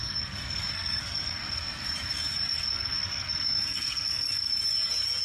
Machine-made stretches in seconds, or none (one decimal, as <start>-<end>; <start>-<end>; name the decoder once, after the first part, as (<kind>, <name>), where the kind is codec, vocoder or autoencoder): 0.0-1.8 (codec, SNAC); 2.7-4.5

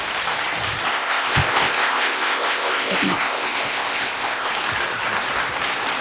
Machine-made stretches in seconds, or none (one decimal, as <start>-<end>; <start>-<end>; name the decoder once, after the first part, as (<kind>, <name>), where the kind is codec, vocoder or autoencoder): 0.9-4.5 (codec, ZipCodec)

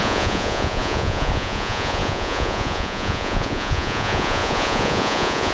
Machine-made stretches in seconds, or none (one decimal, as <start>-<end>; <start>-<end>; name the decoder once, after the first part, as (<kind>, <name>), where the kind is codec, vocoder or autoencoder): 0.0-5.5 (vocoder, Vocos)

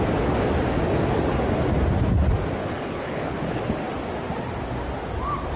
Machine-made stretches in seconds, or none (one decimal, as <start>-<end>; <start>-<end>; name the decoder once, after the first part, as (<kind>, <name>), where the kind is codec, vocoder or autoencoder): 2.6-3.6 (codec, HILCodec)

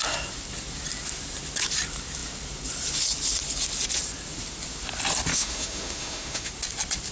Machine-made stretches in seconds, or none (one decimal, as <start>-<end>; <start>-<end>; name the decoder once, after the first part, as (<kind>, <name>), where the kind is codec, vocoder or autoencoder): 5.3-6.5 (autoencoder, DAC-VAE)

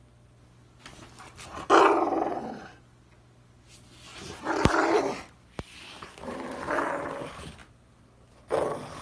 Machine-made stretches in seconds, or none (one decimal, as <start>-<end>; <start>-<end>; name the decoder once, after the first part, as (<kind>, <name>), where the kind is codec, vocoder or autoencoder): 4.1-6.9 (vocoder, BigVGAN v2)

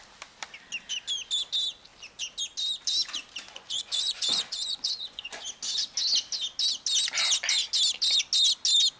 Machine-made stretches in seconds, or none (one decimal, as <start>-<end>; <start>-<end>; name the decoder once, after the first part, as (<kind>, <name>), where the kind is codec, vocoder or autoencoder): 3.5-5.4 (vocoder, Vocos)

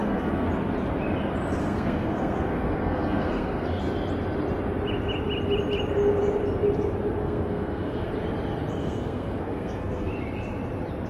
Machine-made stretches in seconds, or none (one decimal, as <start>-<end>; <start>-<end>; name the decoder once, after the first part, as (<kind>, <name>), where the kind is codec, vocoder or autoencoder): 0.0-0.5 (codec, SNAC); 1.6-3.8; 7.2-8.1; 8.8-10.1